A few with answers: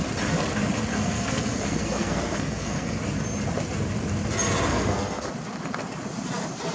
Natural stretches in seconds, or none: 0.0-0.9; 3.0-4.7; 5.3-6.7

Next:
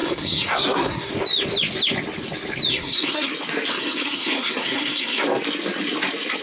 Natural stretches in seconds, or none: 1.1-2.7; 3.3-3.7; 5.2-6.4

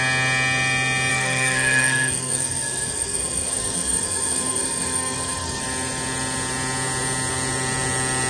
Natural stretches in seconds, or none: 0.0-1.1; 5.6-8.3

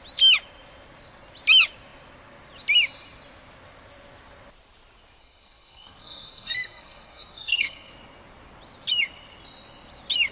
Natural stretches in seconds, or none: 0.0-5.2; 7.9-10.3

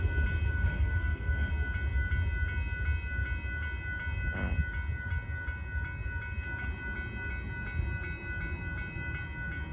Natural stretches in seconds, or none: 0.0-0.5; 1.5-9.7

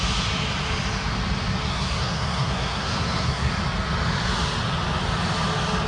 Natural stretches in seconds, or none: 0.0-1.7; 3.5-5.9

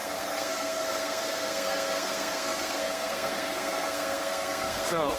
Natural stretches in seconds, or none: none

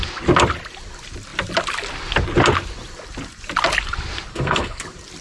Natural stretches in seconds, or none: 0.0-4.3; 4.8-5.2